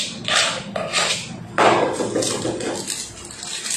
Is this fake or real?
real